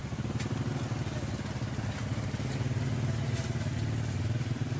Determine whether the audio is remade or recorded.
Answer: recorded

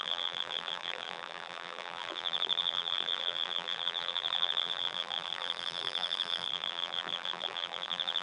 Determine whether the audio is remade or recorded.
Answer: remade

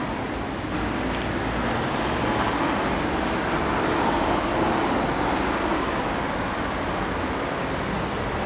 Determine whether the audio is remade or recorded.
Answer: recorded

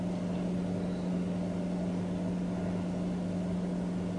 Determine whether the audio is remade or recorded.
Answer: recorded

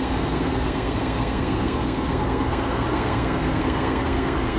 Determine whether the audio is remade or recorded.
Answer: remade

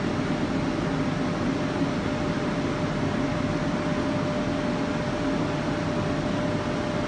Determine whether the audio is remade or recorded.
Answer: recorded